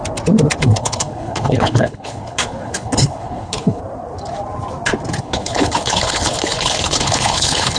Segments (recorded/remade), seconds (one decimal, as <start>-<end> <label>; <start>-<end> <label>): 0.0-0.6 recorded; 0.6-3.8 remade; 3.8-5.2 recorded; 5.2-7.8 remade